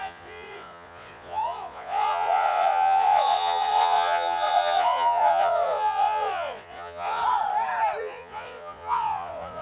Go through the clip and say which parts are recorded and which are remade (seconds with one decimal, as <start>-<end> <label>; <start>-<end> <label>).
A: 0.0-7.2 remade; 7.2-8.0 recorded; 8.0-9.6 remade